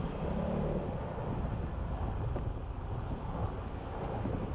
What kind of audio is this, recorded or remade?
recorded